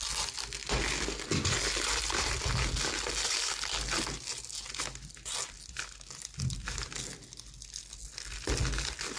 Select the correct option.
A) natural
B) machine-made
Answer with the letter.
A